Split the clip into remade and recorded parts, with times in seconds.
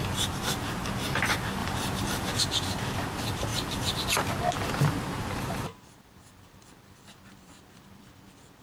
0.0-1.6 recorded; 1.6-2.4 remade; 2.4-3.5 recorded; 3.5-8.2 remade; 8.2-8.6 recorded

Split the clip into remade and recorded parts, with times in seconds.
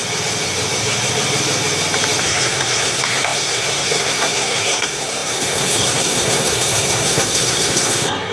0.0-2.2 recorded; 2.2-8.3 remade